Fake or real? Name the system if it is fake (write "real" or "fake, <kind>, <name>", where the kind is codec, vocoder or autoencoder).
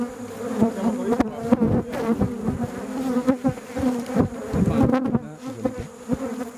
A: real